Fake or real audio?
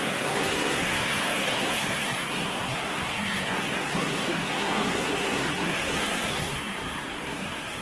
fake